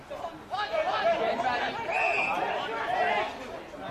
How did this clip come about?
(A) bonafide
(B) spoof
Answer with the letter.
A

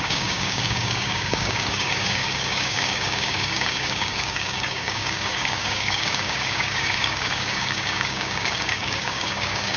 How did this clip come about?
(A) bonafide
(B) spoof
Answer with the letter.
B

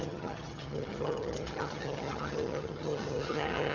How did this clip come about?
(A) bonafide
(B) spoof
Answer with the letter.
B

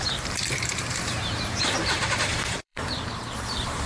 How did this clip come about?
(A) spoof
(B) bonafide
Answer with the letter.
A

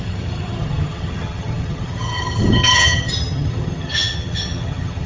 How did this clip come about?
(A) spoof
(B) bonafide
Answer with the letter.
A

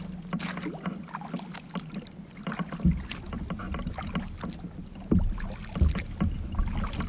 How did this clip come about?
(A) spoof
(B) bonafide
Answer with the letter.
B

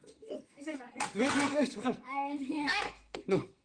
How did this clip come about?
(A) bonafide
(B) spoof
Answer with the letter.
B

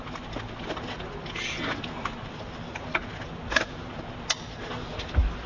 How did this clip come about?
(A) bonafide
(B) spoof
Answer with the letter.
A